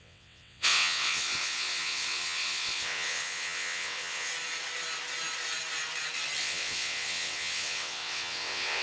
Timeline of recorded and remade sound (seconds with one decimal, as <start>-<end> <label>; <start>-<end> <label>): 0.0-4.3 remade; 4.3-6.4 recorded; 6.4-8.8 remade